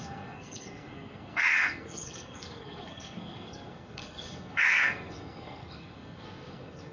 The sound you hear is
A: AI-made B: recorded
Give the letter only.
A